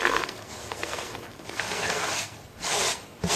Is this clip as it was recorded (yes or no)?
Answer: no